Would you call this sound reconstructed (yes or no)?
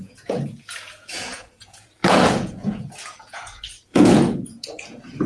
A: yes